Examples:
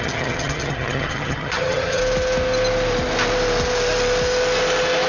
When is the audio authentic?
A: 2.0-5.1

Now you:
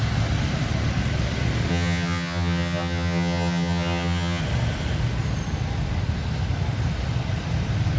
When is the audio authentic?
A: 0.0-1.7; 4.4-8.0